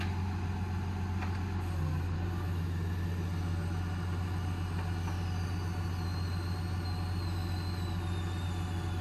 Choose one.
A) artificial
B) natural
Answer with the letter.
B